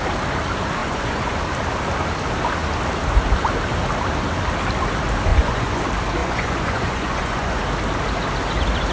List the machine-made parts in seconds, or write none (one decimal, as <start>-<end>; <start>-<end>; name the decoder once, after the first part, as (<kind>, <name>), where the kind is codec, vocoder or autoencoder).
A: 0.8-1.4 (vocoder, Vocos); 5.3-5.8; 6.2-7.6